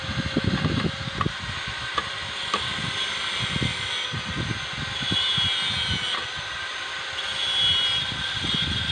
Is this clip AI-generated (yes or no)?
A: no